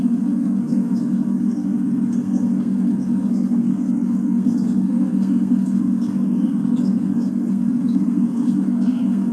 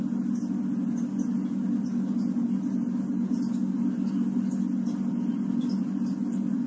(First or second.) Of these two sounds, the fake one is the first